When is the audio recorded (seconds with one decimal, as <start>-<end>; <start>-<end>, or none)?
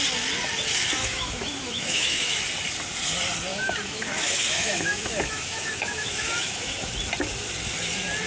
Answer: 0.0-1.0; 2.4-3.5; 6.9-8.3